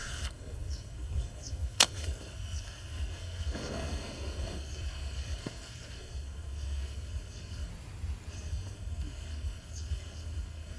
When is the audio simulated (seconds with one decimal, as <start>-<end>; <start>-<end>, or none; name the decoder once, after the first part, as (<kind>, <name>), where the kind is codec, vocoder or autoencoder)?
0.0-7.7 (codec, SNAC); 8.3-10.8